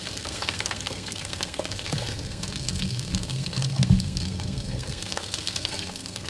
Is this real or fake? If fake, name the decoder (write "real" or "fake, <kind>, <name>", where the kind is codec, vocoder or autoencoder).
fake, codec, SNAC